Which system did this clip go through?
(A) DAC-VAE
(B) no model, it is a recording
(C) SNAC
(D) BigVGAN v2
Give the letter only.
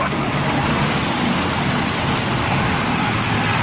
D